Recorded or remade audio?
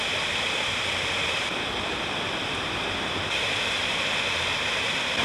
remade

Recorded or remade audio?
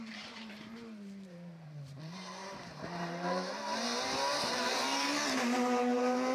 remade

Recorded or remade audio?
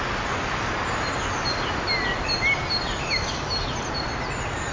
recorded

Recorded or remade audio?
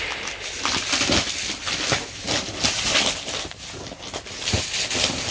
recorded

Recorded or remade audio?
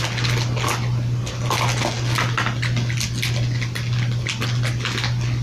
recorded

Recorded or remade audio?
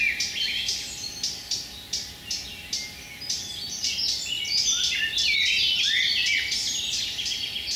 recorded